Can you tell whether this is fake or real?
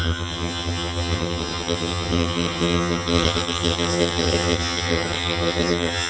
fake